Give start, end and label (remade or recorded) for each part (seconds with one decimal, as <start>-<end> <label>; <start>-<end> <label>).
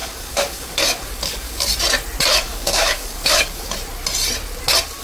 0.0-1.7 remade; 1.7-2.3 recorded; 2.3-3.7 remade; 3.7-5.0 recorded